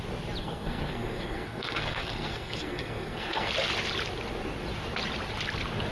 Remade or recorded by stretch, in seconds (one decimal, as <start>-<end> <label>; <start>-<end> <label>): 0.0-0.4 recorded; 0.4-3.5 remade; 3.5-5.9 recorded